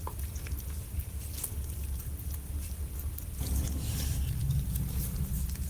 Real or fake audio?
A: real